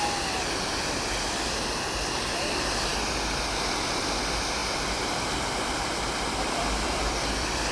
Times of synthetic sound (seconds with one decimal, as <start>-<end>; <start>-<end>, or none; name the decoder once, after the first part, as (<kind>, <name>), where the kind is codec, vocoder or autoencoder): 4.6-7.7 (vocoder, BigVGAN v2)

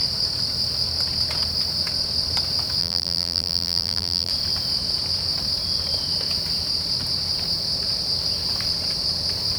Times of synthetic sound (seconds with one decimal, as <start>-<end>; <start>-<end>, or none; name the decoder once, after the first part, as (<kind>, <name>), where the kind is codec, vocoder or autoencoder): 2.8-4.3 (vocoder, BigVGAN v2)

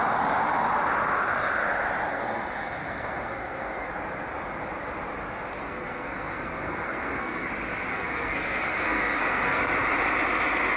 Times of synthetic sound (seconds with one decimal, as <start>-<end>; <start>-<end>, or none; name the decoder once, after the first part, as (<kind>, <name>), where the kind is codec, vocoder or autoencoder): 2.1-3.9 (codec, SNAC); 5.6-7.5; 7.9-9.6

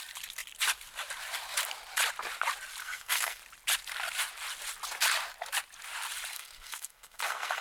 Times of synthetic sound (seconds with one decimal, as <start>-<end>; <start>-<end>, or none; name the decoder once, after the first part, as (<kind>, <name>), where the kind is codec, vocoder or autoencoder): 2.8-3.4 (codec, SNAC); 6.3-7.6

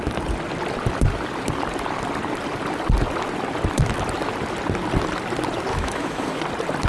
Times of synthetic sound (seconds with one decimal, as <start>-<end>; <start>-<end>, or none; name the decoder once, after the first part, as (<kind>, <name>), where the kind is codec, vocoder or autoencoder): 5.7-6.4 (autoencoder, DAC-VAE)

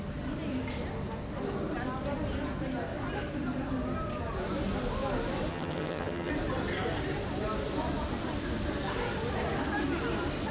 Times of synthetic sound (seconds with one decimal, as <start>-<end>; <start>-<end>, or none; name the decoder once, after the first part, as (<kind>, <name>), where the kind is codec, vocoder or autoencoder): 5.5-6.3 (vocoder, HiFi-GAN)

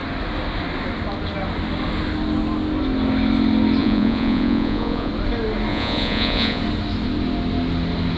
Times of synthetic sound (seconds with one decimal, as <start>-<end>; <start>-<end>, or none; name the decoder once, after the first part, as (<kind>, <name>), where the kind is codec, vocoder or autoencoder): 3.8-5.1 (vocoder, Vocos); 5.7-6.6

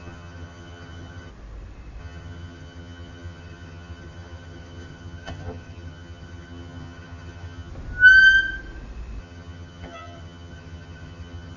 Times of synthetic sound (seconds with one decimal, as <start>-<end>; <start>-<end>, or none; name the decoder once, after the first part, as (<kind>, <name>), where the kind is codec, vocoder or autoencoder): 0.0-1.3 (vocoder, HiFi-GAN); 2.0-7.7; 9.2-11.6